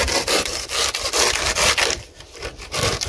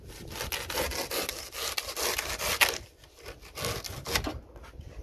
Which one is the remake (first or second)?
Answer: first